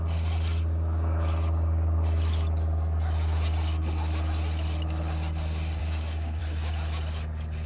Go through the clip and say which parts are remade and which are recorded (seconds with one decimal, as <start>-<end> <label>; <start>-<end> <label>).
0.0-5.8 recorded; 5.8-6.4 remade; 6.4-7.7 recorded